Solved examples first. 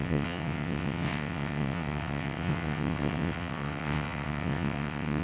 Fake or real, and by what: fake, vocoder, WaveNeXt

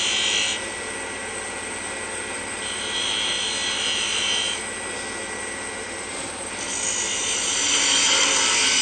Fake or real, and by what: real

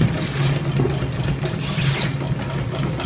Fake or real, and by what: real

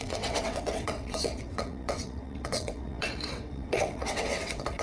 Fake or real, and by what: fake, vocoder, WaveNeXt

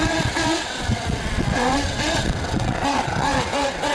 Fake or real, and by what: fake, vocoder, WaveNeXt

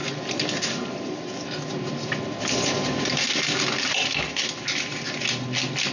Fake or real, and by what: real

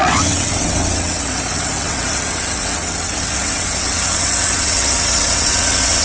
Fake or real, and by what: fake, vocoder, WaveNeXt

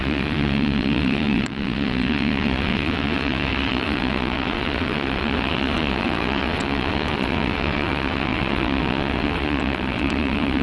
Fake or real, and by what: fake, vocoder, WaveNeXt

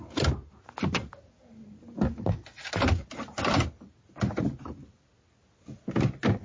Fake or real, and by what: real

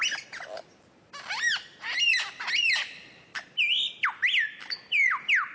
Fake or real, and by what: real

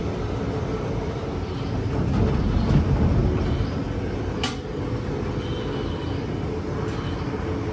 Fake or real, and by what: real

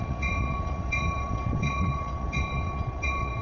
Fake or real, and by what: fake, vocoder, WaveNeXt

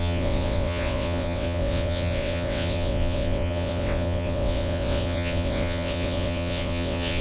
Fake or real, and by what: fake, vocoder, WaveNeXt